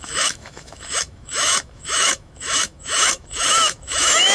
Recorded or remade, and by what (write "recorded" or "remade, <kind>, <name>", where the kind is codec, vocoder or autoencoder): remade, autoencoder, DAC-VAE